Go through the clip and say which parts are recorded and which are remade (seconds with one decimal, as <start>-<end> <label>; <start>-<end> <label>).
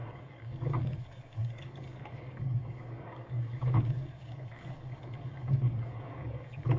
0.0-6.8 remade